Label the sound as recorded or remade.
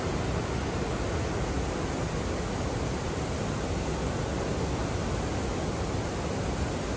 recorded